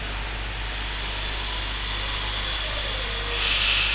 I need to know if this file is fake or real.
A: real